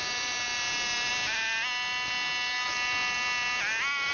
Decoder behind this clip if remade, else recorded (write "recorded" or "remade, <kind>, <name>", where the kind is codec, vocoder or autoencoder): recorded